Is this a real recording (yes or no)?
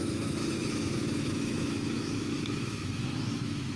no